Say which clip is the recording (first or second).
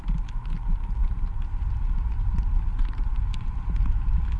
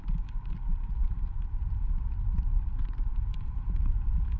first